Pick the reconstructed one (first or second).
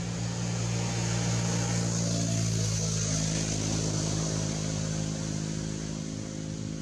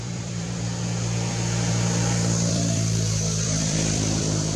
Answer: second